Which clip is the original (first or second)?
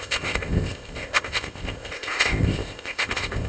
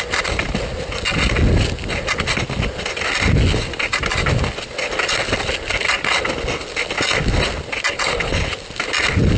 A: second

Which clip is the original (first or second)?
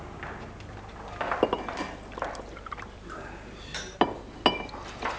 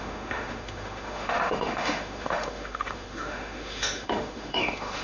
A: first